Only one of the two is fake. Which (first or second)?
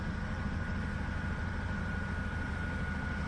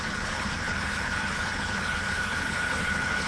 second